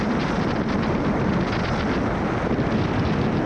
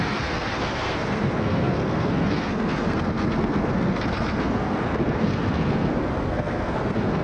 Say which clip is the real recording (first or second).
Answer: first